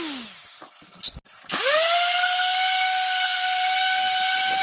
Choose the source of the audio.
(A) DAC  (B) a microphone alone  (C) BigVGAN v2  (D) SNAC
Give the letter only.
B